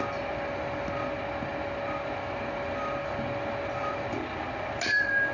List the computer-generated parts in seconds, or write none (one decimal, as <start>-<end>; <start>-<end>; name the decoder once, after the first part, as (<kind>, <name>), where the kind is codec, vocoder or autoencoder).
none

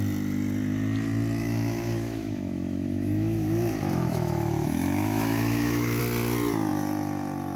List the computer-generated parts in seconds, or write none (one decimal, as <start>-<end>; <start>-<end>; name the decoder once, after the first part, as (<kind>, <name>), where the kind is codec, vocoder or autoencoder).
1.4-6.0 (autoencoder, DAC-VAE)

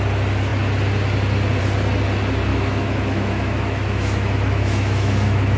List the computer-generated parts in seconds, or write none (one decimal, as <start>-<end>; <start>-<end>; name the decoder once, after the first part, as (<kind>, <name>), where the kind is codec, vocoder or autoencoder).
2.5-5.6 (autoencoder, DAC-VAE)

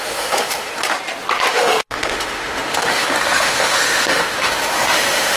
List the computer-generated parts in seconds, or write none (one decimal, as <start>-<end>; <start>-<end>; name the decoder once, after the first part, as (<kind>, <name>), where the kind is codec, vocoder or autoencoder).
0.0-0.7 (autoencoder, DAC-VAE); 1.5-5.4

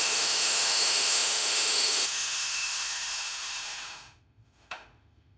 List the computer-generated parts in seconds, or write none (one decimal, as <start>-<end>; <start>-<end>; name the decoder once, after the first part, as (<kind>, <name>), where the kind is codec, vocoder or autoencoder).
0.0-5.4 (autoencoder, DAC-VAE)